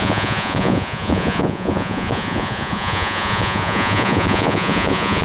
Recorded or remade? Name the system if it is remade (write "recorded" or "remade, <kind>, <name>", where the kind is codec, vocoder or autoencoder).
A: remade, vocoder, Vocos